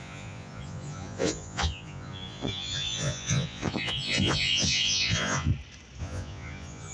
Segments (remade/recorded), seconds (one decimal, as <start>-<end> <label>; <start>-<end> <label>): 0.0-5.5 remade; 5.5-6.0 recorded; 6.0-6.9 remade